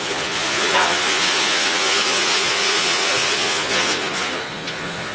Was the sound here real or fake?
fake